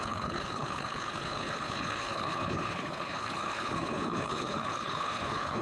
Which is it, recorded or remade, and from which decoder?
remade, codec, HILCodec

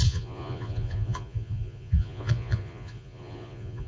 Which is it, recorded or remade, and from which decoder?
remade, vocoder, Vocos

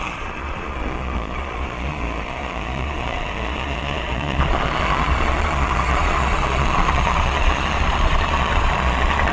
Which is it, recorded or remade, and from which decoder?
remade, vocoder, Vocos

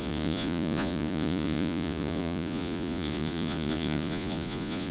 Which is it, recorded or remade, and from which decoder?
remade, vocoder, Vocos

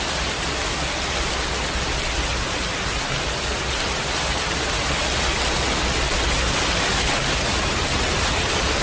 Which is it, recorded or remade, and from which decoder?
recorded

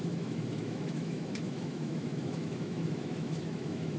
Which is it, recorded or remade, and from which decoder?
remade, autoencoder, DAC-VAE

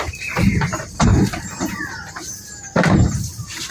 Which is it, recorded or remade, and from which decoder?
remade, vocoder, BigVGAN v2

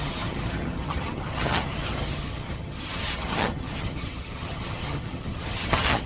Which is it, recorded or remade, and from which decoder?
remade, vocoder, HiFi-GAN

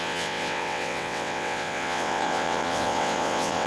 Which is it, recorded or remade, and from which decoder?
remade, vocoder, WaveNeXt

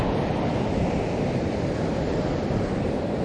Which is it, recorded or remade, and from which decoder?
remade, vocoder, BigVGAN v2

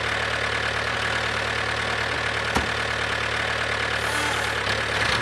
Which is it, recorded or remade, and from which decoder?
recorded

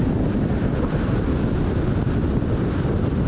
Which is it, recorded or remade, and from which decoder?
remade, vocoder, BigVGAN v2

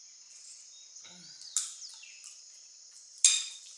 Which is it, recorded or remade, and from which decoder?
recorded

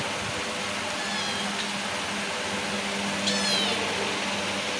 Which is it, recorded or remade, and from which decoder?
recorded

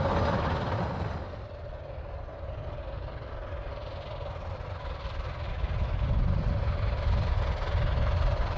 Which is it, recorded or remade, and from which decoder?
recorded